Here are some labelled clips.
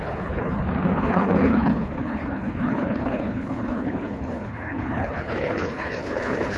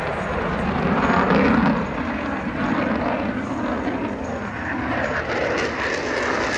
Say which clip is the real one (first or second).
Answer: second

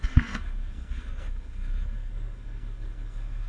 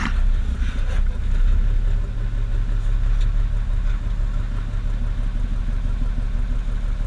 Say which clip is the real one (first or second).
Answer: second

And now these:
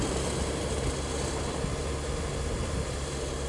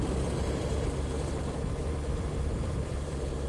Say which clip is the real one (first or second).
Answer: first